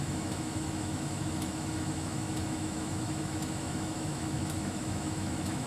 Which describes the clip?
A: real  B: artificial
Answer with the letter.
B